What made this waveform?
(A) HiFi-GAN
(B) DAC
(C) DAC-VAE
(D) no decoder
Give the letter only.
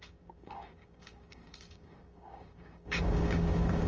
B